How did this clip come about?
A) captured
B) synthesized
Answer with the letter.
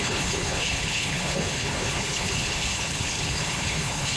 B